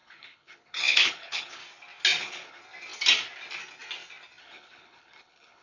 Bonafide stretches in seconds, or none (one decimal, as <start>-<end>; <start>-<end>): 1.6-2.2; 2.6-4.4